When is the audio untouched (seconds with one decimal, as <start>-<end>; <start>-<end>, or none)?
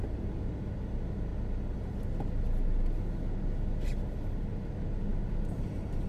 0.0-6.1